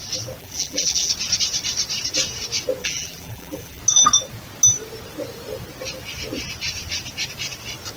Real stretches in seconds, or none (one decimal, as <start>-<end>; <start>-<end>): 0.0-0.4; 1.1-2.8; 3.8-8.0